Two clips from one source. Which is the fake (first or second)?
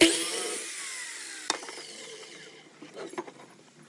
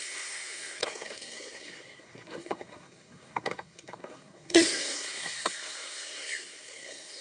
second